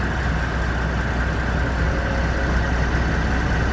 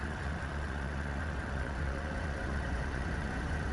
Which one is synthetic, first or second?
second